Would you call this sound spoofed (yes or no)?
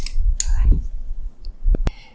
no